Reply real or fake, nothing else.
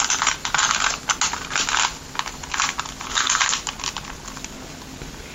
real